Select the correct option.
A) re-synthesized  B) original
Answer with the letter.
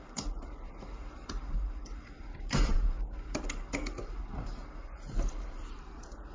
A